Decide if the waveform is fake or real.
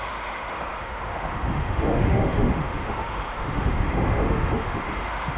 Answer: fake